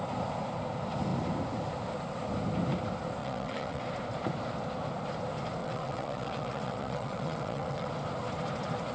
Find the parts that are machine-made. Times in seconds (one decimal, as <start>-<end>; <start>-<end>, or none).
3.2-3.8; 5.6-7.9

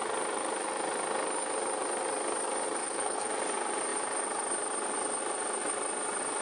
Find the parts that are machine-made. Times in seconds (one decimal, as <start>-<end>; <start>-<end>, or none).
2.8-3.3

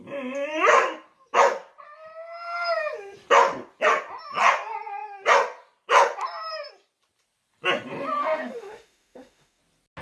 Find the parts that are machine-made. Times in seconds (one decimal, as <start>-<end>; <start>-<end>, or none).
8.2-9.6